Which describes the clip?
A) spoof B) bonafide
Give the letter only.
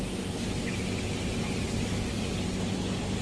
B